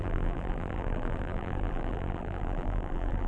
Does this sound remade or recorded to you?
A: remade